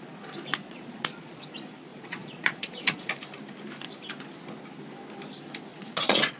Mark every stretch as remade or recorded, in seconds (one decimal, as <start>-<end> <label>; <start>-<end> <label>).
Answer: 0.0-0.6 recorded; 0.6-1.4 remade; 1.4-1.9 recorded; 1.9-3.1 remade; 3.1-5.7 recorded; 5.7-6.4 remade